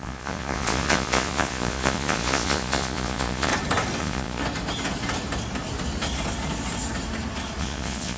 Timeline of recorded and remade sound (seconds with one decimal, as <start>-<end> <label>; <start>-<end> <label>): 0.0-3.5 remade; 3.5-4.0 recorded; 4.0-4.4 remade; 4.4-7.6 recorded; 7.6-8.2 remade